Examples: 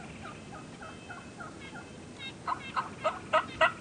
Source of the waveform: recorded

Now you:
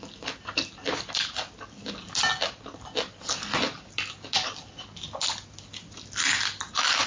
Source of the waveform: recorded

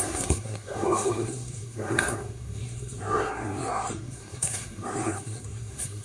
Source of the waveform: remade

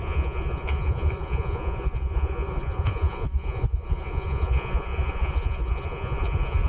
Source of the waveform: remade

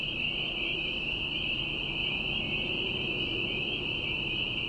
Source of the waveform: remade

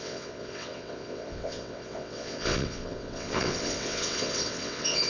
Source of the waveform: remade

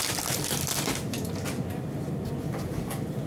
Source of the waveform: recorded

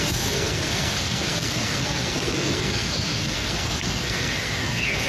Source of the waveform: remade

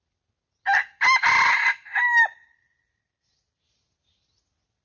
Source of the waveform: recorded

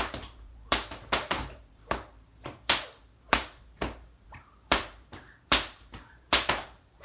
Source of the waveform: remade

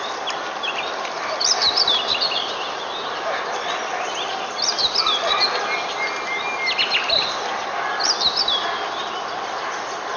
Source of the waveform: recorded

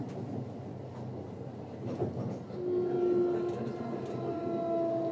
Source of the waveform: recorded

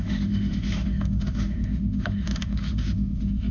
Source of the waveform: remade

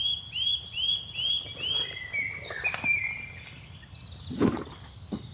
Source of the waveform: recorded